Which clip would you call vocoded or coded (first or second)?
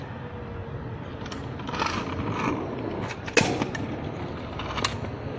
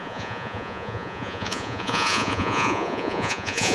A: second